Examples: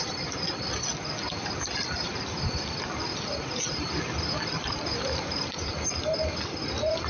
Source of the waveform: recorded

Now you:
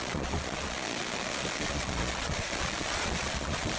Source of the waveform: remade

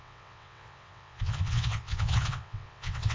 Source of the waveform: remade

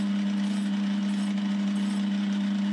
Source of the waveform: recorded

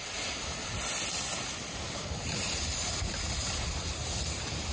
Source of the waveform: recorded